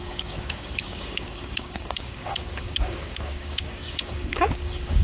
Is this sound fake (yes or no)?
yes